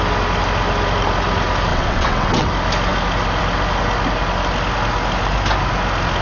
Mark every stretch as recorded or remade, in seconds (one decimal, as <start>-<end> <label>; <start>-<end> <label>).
0.0-1.7 recorded; 1.7-2.5 remade; 2.5-6.2 recorded

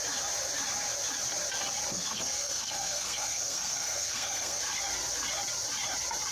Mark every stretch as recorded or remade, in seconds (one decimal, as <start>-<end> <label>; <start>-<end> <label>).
0.0-1.9 recorded; 1.9-4.6 remade; 4.6-6.3 recorded

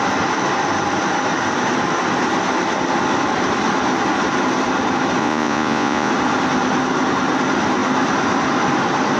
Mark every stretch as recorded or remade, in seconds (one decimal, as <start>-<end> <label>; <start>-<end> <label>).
0.0-5.2 recorded; 5.2-6.1 remade; 6.1-9.2 recorded

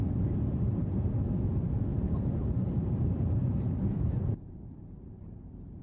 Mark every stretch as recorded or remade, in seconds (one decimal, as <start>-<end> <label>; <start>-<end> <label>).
0.0-1.9 recorded; 1.9-5.8 remade

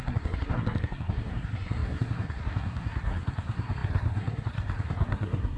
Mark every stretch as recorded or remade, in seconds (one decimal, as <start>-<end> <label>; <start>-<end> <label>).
0.0-5.6 remade

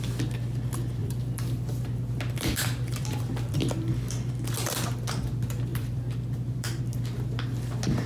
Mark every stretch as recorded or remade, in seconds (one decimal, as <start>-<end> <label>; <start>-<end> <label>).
0.0-1.0 recorded; 1.0-4.3 remade; 4.3-5.7 recorded; 5.7-6.8 remade; 6.8-8.1 recorded

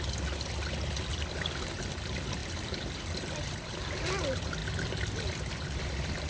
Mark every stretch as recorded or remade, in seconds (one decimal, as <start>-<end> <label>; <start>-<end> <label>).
0.0-1.1 recorded; 1.1-1.8 remade; 1.8-2.4 recorded; 2.4-3.7 remade; 3.7-6.3 recorded